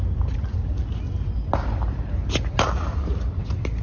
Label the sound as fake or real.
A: real